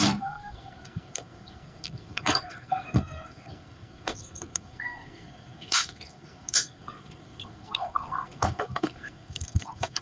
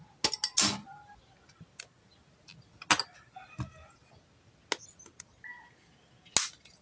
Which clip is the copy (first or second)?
first